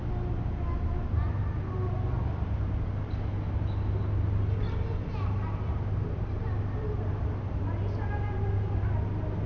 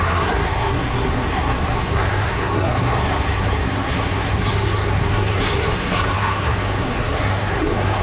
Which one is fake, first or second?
second